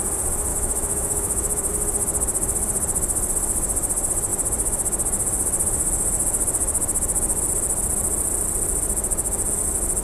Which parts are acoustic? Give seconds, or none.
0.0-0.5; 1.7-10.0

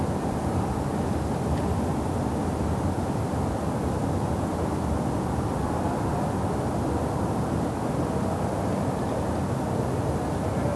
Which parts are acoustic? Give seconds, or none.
0.0-10.8

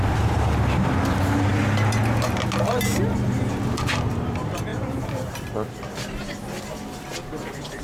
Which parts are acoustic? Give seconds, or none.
0.0-4.7; 5.3-7.8

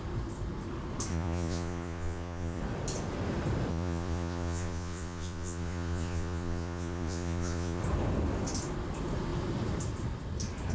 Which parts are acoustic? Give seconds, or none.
0.0-1.1; 2.6-3.7; 7.8-10.7